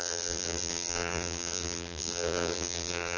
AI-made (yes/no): yes